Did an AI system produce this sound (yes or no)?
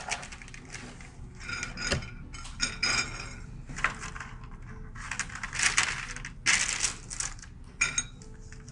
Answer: no